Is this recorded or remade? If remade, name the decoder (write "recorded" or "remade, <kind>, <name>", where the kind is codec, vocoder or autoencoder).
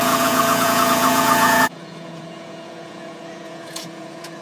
remade, vocoder, Vocos